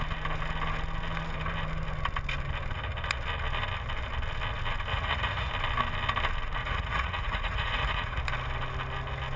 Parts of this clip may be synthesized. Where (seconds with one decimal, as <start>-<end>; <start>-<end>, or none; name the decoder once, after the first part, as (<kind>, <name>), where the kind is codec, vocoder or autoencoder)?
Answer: 4.9-5.5 (vocoder, Vocos); 6.6-8.2